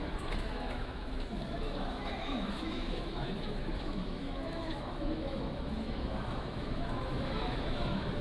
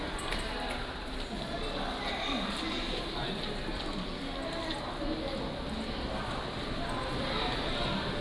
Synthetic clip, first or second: first